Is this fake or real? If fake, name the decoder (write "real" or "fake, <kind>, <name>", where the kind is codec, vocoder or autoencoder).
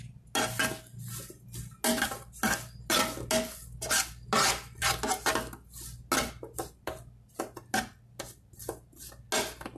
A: real